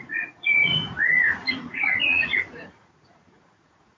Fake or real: fake